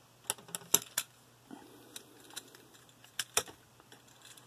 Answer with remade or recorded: recorded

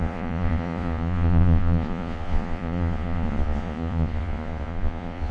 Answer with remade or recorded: remade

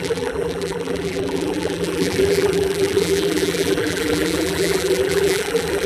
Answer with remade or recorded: remade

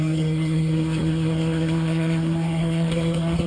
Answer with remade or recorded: remade